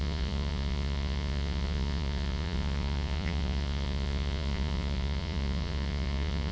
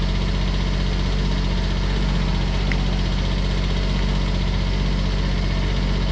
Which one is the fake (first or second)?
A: first